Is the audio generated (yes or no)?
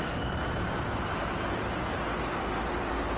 no